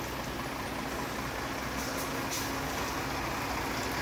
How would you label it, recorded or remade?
recorded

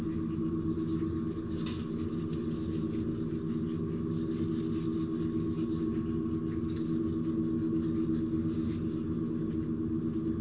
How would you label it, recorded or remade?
recorded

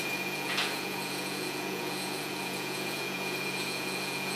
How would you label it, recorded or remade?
remade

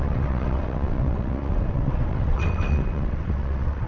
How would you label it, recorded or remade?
remade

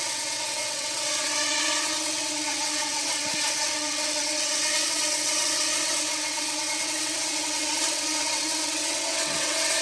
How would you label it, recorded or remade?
remade